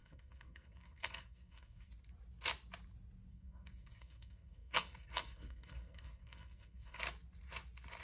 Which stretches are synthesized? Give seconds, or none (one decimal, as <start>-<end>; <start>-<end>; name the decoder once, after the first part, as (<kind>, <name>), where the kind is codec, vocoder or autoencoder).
0.0-1.9 (codec, SNAC); 3.3-7.0